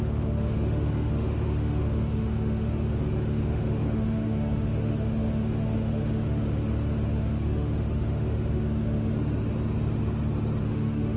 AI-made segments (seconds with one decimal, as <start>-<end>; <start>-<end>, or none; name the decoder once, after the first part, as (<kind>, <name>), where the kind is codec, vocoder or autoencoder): 0.0-9.1 (autoencoder, DAC-VAE); 10.6-11.2

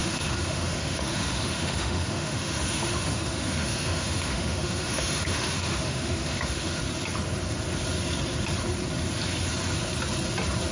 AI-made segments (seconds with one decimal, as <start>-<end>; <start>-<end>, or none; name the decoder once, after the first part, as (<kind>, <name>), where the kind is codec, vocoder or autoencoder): 0.0-6.8 (autoencoder, DAC-VAE)

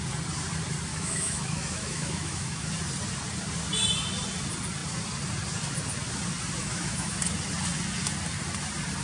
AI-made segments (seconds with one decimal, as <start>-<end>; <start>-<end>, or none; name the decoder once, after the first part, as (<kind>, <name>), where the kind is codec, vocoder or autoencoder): 0.9-2.7 (autoencoder, DAC-VAE); 6.6-7.2